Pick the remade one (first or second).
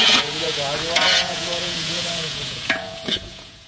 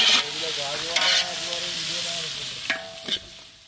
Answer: first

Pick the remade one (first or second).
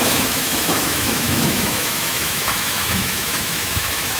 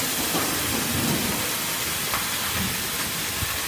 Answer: first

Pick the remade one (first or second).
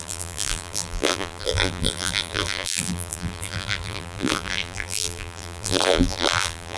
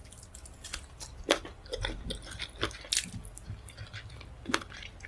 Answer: first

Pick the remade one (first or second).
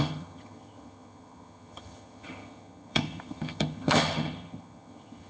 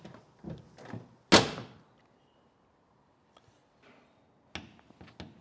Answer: first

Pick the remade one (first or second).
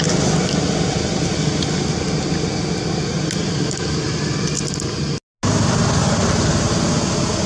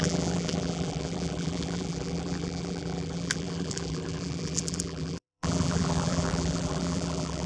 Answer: second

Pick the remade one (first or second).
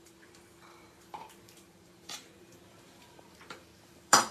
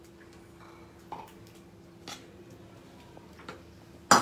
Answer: first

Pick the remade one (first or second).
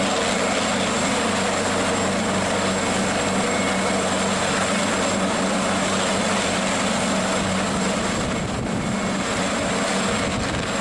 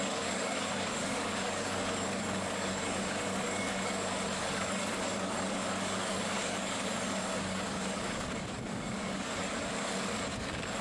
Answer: second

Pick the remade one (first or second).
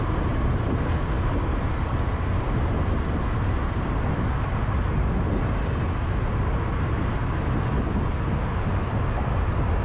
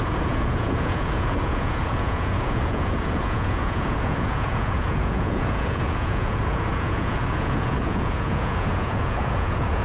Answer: second